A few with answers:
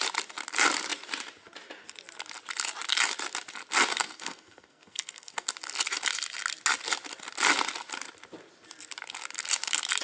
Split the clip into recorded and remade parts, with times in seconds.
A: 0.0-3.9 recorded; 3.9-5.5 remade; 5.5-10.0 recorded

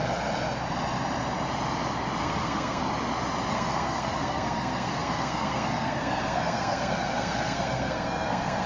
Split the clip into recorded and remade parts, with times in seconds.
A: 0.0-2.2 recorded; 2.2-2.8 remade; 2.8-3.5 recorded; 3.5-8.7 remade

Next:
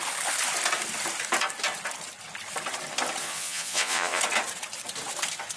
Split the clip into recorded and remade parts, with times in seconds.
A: 0.0-3.2 recorded; 3.2-4.2 remade; 4.2-5.6 recorded

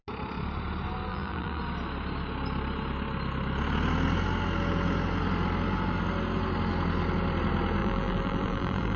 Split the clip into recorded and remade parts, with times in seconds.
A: 0.0-1.1 recorded; 1.1-1.6 remade; 1.6-7.8 recorded; 7.8-9.0 remade

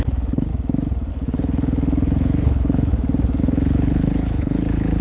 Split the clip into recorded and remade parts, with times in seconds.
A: 0.0-0.5 remade; 0.5-1.1 recorded; 1.1-2.9 remade; 2.9-3.4 recorded; 3.4-5.0 remade

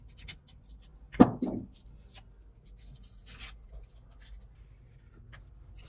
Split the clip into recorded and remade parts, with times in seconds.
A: 0.0-5.9 recorded

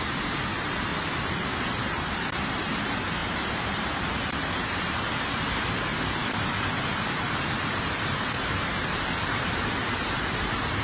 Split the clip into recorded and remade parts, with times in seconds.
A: 0.0-0.9 remade; 0.9-1.8 recorded; 1.8-10.8 remade